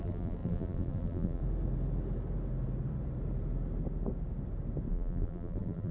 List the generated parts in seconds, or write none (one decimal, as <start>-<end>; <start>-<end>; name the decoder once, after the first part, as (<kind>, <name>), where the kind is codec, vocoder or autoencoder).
0.0-1.4 (vocoder, BigVGAN v2); 4.9-5.9